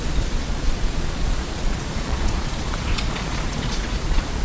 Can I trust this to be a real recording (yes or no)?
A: no